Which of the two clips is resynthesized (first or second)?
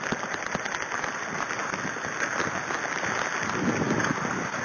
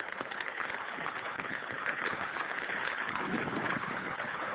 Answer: second